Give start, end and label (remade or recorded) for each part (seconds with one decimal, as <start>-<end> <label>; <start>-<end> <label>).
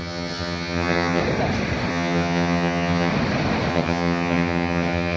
0.0-1.2 remade; 1.2-1.9 recorded; 1.9-3.1 remade; 3.1-3.7 recorded; 3.7-5.2 remade